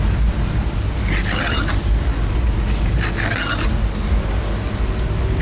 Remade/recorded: recorded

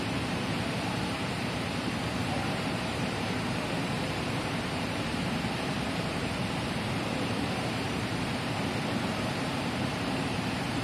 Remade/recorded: remade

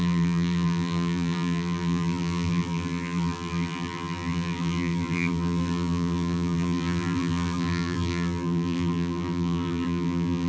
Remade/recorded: remade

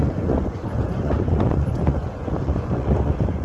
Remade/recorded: remade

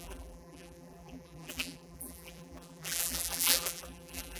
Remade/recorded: remade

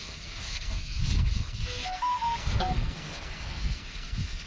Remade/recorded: remade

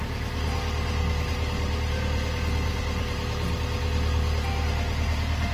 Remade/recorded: recorded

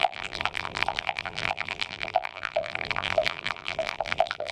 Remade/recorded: remade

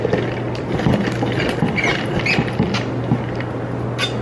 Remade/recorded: recorded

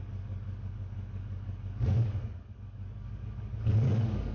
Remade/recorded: remade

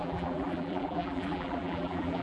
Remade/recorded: remade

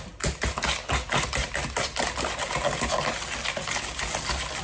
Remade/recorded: recorded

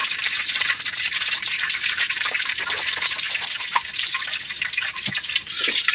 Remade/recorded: remade